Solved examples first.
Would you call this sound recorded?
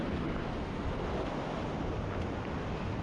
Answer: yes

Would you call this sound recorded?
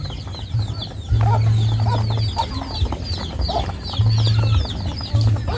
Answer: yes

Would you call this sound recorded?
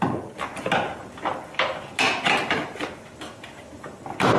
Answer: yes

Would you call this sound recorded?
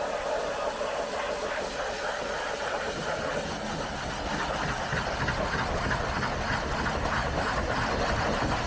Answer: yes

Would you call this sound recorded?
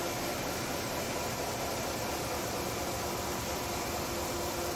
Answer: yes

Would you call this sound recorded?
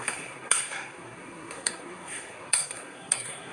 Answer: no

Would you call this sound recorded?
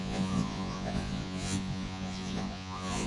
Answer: no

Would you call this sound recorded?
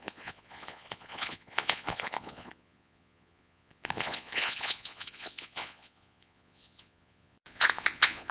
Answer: no